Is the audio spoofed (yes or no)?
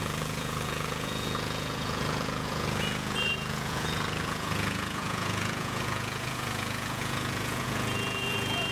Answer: yes